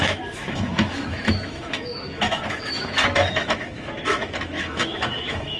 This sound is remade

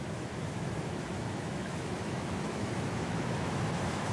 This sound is remade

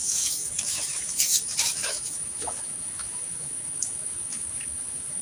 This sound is remade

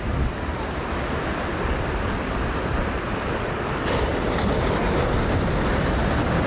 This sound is recorded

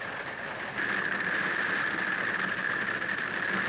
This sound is recorded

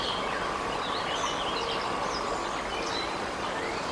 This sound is recorded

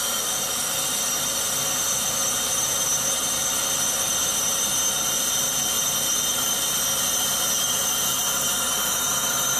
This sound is recorded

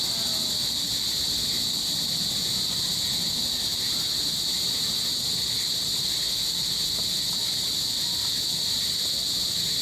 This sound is recorded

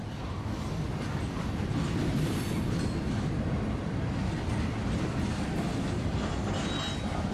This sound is recorded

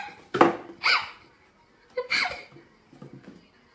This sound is recorded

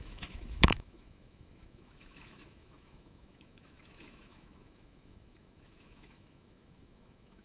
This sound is remade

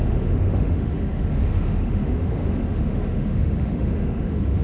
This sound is remade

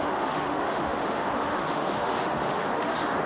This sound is remade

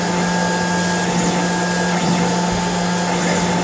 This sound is recorded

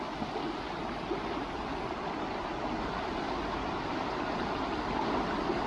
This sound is recorded